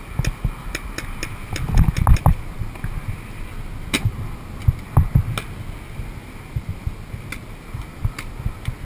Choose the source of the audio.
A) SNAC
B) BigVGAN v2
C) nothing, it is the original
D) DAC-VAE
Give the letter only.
C